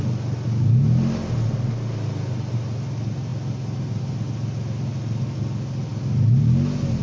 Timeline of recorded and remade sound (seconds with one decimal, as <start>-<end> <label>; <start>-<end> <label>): 0.0-7.0 recorded